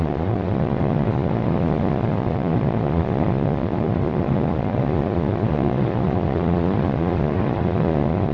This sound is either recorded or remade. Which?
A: remade